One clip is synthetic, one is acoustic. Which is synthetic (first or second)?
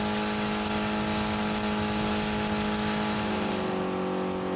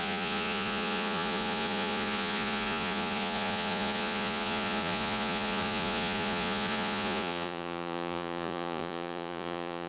second